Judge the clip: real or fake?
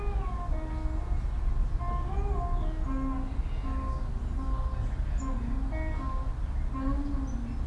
real